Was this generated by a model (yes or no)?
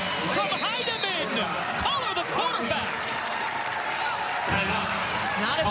no